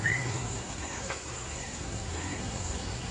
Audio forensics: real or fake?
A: fake